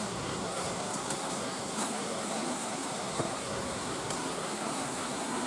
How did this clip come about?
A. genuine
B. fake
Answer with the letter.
B